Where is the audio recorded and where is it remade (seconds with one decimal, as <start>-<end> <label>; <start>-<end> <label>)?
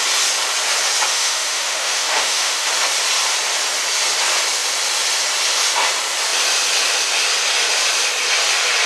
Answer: 0.0-1.1 recorded; 1.1-2.7 remade; 2.7-8.9 recorded